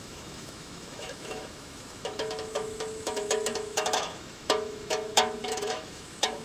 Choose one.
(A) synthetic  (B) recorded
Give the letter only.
A